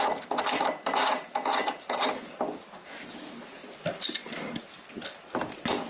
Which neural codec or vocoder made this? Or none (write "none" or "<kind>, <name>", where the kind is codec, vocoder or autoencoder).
none